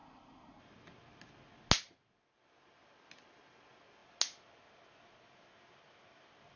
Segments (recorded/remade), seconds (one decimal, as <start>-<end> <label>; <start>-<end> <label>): 0.0-0.6 remade; 0.6-6.6 recorded